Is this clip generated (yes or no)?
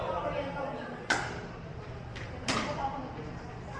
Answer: no